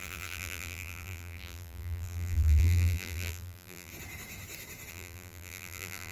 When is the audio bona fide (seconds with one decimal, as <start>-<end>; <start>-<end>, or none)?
3.9-4.9